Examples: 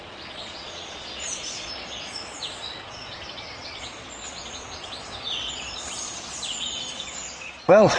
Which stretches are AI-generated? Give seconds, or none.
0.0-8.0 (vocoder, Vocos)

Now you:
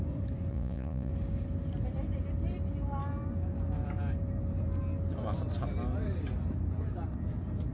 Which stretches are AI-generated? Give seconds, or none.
0.5-1.1 (vocoder, Vocos)

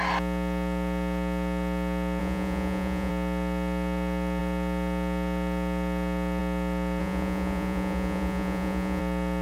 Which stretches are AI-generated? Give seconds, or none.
2.2-3.1 (vocoder, Vocos); 7.0-9.0